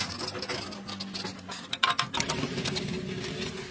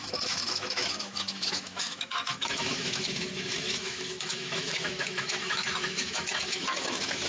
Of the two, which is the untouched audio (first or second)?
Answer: first